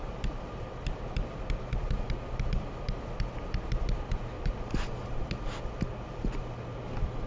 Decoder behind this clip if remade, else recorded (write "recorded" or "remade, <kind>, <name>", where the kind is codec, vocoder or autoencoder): recorded